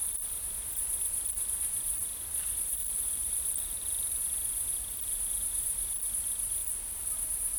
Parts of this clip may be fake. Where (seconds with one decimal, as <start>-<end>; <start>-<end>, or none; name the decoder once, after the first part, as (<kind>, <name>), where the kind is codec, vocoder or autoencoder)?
2.8-4.2 (vocoder, BigVGAN v2); 6.6-7.6